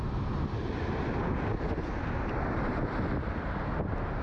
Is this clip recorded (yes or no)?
yes